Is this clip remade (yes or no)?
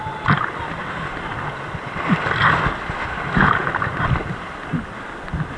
no